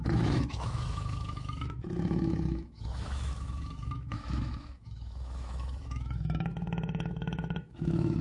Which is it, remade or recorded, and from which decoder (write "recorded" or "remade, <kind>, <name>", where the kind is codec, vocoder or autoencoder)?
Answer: remade, autoencoder, DAC-VAE